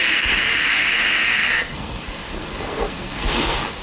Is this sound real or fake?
fake